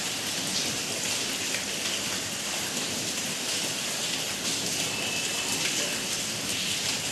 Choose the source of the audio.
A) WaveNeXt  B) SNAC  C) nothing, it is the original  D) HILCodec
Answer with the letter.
C